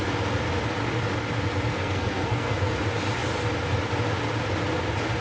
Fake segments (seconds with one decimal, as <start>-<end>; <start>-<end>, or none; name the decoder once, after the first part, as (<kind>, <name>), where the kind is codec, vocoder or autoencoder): 1.7-2.7 (codec, SNAC)